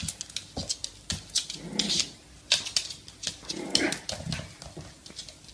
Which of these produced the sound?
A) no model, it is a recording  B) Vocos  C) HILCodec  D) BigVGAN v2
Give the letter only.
A